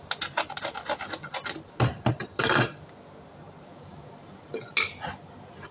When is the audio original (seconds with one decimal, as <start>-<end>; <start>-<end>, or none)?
0.0-5.7